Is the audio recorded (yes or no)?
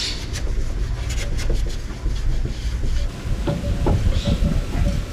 yes